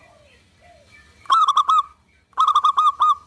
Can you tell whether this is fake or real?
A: real